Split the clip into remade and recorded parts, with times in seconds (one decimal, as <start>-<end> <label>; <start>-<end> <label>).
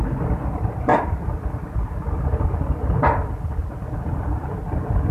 0.0-5.1 recorded